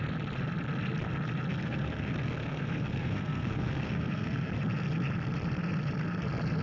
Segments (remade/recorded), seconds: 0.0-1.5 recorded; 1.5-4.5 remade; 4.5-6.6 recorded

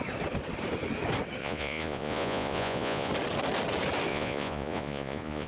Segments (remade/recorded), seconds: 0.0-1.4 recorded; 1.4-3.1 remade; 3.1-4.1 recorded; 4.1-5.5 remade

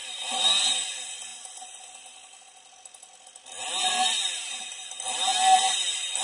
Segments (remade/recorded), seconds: 0.0-6.2 recorded

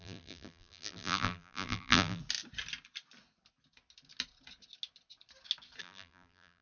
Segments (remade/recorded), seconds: 0.0-2.2 remade; 2.2-5.8 recorded; 5.8-6.6 remade

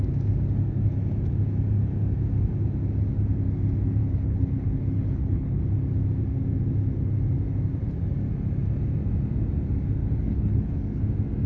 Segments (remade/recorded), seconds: 0.0-4.0 recorded; 4.0-5.6 remade; 5.6-10.0 recorded; 10.0-11.0 remade; 11.0-11.5 recorded

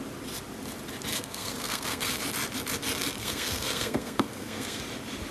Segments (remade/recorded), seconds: 0.0-1.1 recorded; 1.1-2.2 remade; 2.2-3.2 recorded; 3.2-4.8 remade; 4.8-5.3 recorded